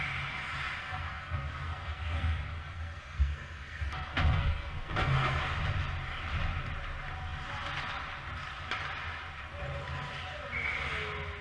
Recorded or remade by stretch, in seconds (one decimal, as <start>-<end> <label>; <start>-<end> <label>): 0.0-0.8 recorded; 0.8-5.4 remade; 5.4-11.4 recorded